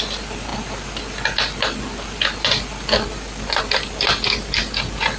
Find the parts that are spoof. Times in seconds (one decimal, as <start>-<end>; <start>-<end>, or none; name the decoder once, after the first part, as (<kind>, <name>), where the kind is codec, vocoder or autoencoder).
none

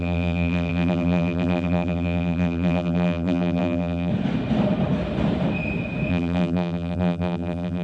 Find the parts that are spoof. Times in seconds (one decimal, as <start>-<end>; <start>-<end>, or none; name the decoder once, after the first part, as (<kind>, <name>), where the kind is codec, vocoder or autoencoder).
0.0-4.1 (vocoder, BigVGAN v2); 6.1-7.8

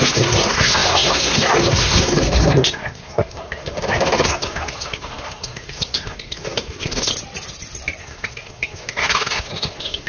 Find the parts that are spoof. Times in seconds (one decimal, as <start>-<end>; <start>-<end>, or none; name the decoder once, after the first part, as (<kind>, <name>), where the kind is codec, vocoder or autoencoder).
0.0-7.1 (codec, SNAC); 8.0-10.1

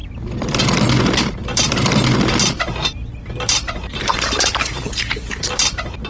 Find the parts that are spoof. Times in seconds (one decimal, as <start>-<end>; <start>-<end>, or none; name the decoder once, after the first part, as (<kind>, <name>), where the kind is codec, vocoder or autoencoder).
none

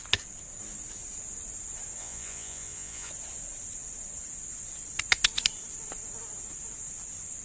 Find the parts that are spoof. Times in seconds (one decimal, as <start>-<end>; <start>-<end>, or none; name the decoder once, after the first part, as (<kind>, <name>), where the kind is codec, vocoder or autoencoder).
2.0-3.1 (vocoder, Vocos)

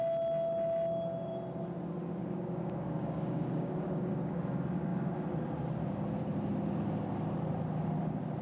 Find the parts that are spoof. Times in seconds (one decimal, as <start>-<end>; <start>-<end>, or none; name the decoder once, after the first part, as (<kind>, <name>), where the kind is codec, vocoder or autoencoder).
2.2-4.4 (codec, DAC)

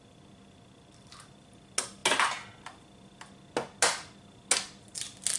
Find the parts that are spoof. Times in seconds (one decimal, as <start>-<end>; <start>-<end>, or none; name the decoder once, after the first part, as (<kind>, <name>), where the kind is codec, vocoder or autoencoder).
none

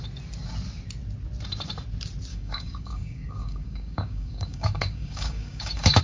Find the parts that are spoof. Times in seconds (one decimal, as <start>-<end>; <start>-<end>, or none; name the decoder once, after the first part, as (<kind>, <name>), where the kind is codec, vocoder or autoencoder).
2.3-6.0 (codec, DAC)